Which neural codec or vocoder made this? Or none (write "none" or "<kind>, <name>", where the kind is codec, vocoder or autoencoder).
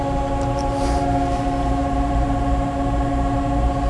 vocoder, BigVGAN v2